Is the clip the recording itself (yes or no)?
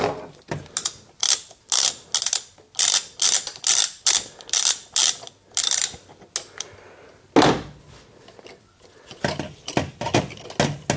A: yes